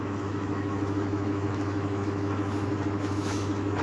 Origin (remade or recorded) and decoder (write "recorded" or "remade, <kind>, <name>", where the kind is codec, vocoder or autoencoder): remade, autoencoder, DAC-VAE